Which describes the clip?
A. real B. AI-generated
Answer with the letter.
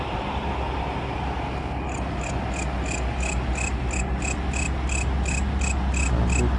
A